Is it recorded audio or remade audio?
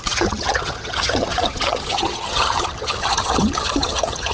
remade